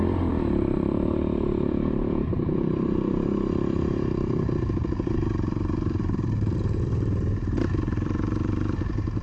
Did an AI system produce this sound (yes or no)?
yes